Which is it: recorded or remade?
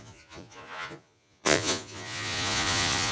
remade